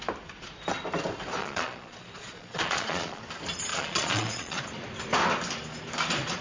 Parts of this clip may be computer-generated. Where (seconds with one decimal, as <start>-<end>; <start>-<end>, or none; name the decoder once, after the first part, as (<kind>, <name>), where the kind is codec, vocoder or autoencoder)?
1.4-3.2 (vocoder, Vocos); 3.7-4.6